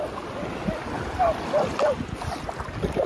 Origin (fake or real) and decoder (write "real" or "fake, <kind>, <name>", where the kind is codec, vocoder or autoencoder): real